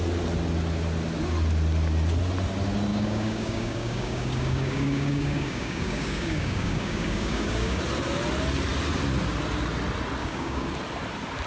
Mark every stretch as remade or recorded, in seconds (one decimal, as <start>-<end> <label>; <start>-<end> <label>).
0.0-2.9 recorded; 2.9-7.8 remade; 7.8-10.2 recorded; 10.2-10.7 remade; 10.7-11.5 recorded